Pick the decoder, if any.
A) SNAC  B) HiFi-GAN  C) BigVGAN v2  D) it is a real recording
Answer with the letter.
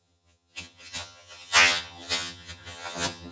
B